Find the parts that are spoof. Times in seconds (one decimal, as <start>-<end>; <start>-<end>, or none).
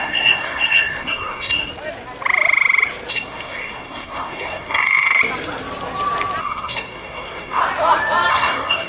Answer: 0.0-1.7; 3.1-5.2; 6.4-7.6; 8.3-8.9